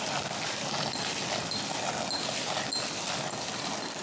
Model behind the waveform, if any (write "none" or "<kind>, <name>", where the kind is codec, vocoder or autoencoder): none